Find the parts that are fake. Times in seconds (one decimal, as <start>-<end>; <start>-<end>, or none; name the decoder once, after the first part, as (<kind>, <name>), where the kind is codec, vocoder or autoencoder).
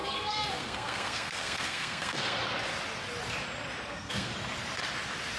0.0-2.4 (codec, SNAC); 3.9-4.3